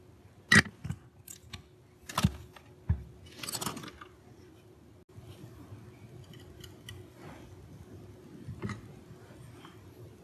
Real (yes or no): yes